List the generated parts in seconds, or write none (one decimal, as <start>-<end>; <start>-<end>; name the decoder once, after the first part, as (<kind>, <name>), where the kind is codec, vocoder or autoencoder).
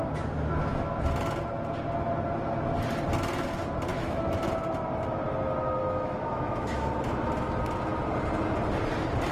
3.9-4.5 (autoencoder, DAC-VAE); 5.8-6.9